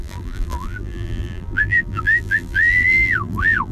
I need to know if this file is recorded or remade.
remade